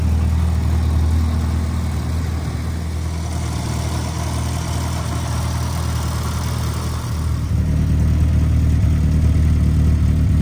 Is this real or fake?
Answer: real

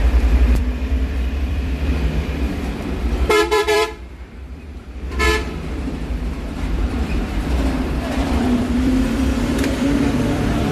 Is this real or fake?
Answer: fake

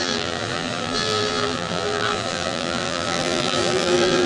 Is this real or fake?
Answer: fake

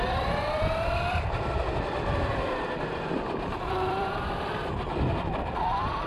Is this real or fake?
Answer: fake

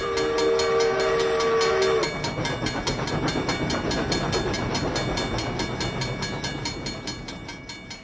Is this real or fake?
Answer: real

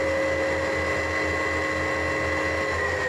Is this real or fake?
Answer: real